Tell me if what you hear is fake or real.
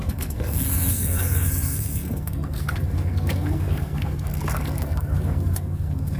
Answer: fake